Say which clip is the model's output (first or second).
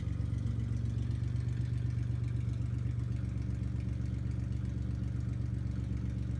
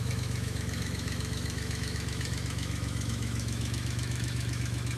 second